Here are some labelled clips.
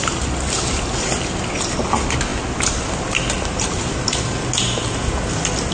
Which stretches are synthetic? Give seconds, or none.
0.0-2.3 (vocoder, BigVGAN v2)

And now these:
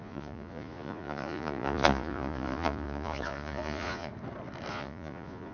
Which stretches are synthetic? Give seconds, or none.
0.0-4.1 (vocoder, Vocos); 4.7-5.5

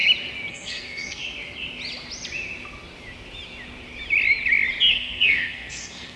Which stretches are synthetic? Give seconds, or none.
0.5-1.2 (codec, SNAC); 4.9-6.2

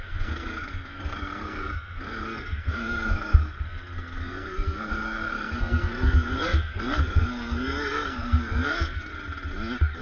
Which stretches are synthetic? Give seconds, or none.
0.0-9.1 (codec, SNAC)

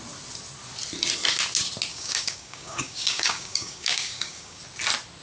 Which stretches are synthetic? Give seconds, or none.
1.9-4.6 (codec, DAC)

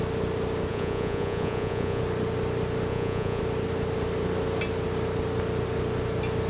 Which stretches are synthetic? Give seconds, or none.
0.7-2.0 (vocoder, Vocos); 2.9-3.4